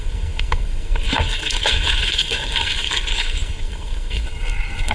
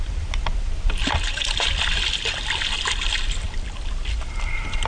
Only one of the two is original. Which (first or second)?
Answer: second